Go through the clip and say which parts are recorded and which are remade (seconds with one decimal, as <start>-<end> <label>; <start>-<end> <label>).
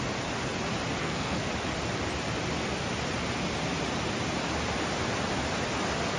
0.0-1.0 recorded; 1.0-1.5 remade; 1.5-6.2 recorded